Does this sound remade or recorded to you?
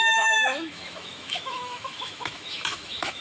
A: remade